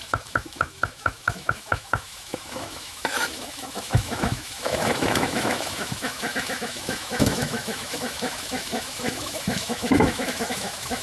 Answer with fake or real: fake